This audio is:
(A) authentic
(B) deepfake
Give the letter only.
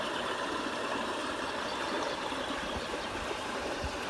B